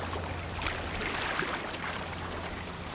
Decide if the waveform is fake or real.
real